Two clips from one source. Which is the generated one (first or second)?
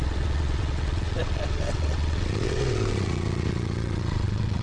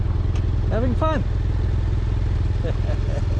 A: first